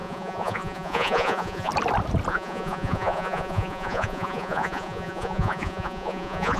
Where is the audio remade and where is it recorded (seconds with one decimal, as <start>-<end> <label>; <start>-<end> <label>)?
0.0-1.7 remade; 1.7-2.3 recorded; 2.3-6.6 remade